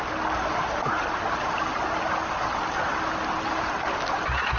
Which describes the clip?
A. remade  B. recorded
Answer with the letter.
B